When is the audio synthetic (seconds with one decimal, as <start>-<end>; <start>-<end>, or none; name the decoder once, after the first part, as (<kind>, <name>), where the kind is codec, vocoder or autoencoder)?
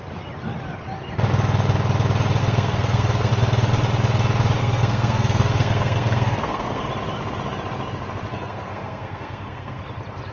2.4-3.3 (codec, SNAC); 4.6-6.8; 8.3-9.8